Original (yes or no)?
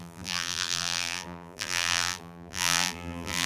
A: no